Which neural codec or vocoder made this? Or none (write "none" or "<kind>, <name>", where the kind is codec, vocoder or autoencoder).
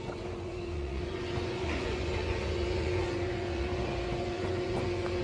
vocoder, Vocos